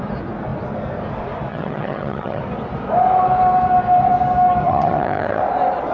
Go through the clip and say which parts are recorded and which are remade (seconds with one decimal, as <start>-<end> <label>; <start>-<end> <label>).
0.0-1.5 recorded; 1.5-2.4 remade; 2.4-4.6 recorded; 4.6-5.4 remade; 5.4-5.9 recorded